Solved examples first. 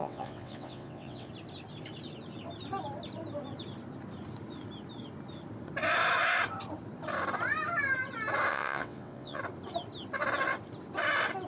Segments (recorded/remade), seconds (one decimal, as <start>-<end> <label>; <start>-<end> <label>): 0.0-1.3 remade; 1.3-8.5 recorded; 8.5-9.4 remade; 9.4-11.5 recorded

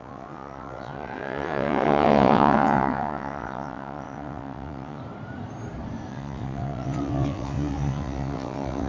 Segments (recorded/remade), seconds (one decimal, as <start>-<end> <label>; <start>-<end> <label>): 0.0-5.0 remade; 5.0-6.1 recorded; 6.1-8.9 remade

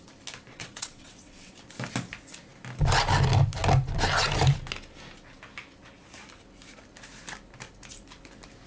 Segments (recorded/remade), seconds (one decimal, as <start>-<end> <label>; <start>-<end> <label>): 0.0-0.5 recorded; 0.5-1.5 remade; 1.5-8.7 recorded

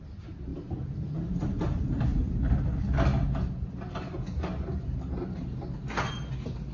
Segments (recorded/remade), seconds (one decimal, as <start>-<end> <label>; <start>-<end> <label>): 0.0-6.7 recorded